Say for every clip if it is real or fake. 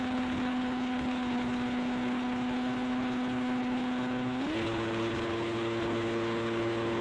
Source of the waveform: fake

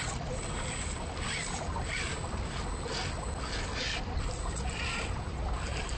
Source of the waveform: real